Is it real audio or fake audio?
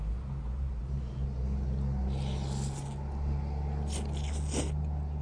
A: real